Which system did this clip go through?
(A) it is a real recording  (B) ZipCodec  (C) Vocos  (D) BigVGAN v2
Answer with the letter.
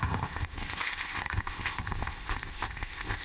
B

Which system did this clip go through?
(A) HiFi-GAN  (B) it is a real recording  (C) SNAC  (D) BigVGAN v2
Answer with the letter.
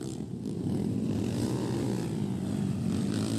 B